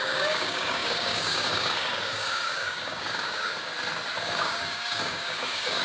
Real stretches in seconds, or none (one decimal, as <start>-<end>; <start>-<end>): 3.7-4.2